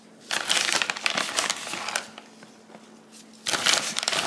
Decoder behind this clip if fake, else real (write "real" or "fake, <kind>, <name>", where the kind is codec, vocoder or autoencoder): real